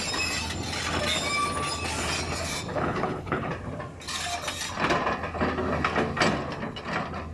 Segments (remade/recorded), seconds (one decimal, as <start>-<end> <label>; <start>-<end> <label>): 0.0-2.7 recorded; 2.7-3.5 remade; 3.5-7.3 recorded